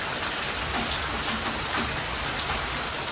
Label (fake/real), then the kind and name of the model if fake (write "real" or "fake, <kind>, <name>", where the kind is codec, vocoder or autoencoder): real